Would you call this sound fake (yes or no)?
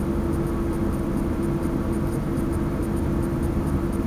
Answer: no